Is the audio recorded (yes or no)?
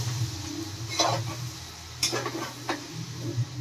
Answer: yes